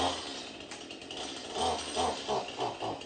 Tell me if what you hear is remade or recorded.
recorded